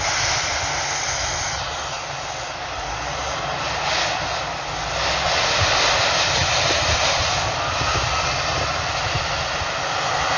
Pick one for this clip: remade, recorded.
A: recorded